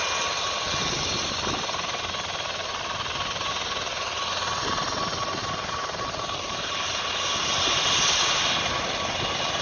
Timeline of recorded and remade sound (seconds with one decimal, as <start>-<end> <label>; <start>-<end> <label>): 0.0-5.4 recorded; 5.4-8.7 remade; 8.7-9.6 recorded